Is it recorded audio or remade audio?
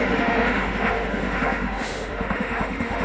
remade